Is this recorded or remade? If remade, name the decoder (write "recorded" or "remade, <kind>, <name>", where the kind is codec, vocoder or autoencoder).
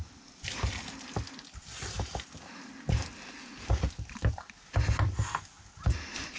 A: recorded